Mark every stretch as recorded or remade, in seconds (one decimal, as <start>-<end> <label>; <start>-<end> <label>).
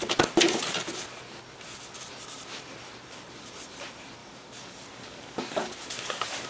0.0-4.2 recorded; 4.2-6.5 remade